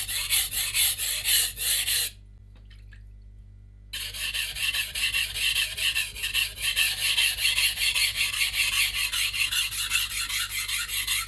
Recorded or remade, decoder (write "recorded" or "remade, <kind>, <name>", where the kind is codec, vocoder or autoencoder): recorded